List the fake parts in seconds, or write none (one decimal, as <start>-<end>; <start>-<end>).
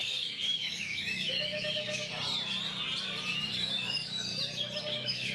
0.0-2.1; 3.3-4.3; 4.8-5.3